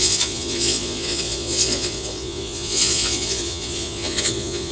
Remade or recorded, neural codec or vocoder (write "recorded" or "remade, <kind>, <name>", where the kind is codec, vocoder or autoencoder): remade, vocoder, Vocos